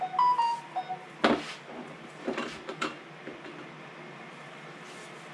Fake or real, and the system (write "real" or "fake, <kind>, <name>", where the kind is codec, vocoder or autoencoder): real